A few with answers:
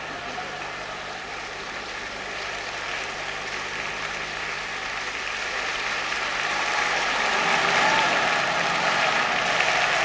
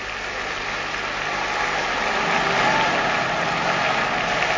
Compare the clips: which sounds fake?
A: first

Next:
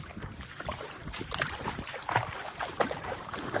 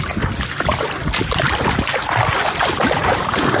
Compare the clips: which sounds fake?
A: first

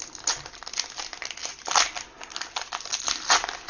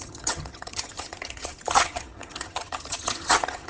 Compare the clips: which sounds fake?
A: second